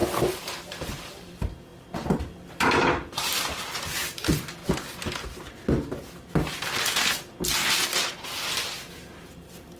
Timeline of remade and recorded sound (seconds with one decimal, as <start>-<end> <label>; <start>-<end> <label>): 0.0-4.6 remade; 4.6-8.1 recorded; 8.1-9.8 remade